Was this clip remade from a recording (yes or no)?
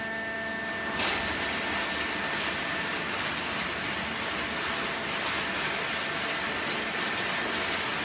no